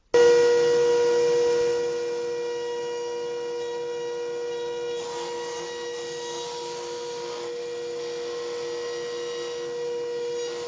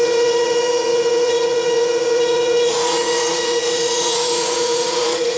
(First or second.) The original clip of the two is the first